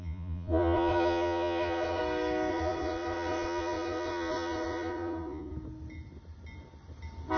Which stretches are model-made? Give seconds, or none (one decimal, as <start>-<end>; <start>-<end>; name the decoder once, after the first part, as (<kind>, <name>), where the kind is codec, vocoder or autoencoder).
0.0-2.0 (vocoder, Vocos); 2.5-5.5